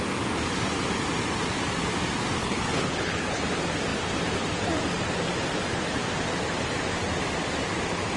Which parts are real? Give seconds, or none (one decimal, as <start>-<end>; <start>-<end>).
0.0-2.4; 3.4-8.2